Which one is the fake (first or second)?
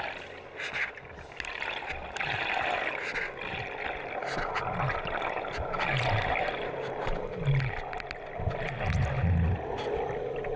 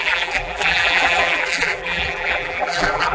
second